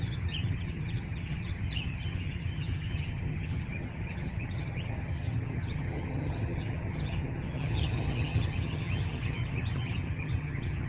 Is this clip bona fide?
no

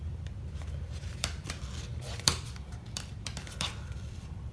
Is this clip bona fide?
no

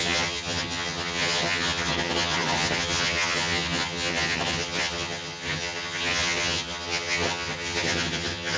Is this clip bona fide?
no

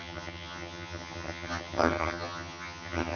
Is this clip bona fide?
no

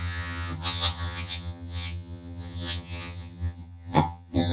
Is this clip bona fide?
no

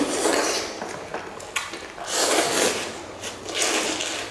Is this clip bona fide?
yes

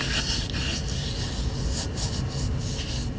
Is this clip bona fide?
yes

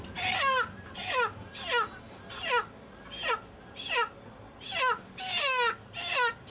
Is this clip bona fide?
yes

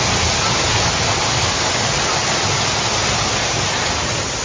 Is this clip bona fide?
yes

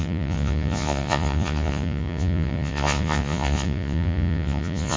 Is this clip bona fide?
no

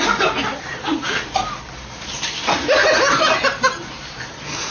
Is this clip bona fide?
yes